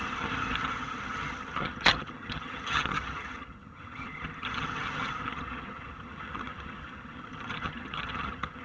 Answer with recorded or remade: remade